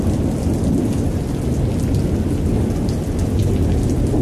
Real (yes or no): yes